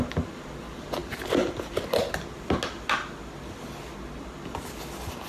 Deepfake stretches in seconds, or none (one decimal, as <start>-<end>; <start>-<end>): none